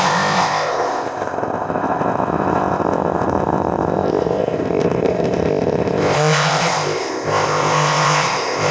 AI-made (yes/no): yes